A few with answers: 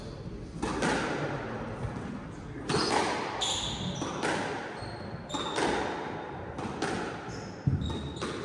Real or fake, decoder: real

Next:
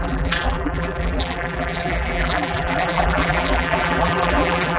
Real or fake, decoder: fake, vocoder, BigVGAN v2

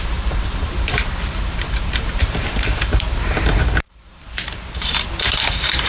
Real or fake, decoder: fake, vocoder, BigVGAN v2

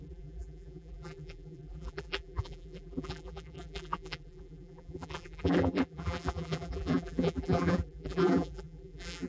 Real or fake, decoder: fake, vocoder, BigVGAN v2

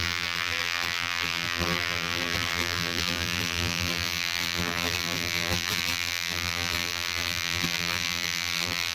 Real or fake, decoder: fake, vocoder, BigVGAN v2